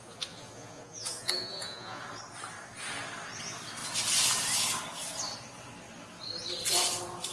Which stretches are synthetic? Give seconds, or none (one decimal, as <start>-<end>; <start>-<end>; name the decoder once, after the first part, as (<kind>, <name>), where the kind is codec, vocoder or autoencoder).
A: 0.0-2.0 (vocoder, Vocos)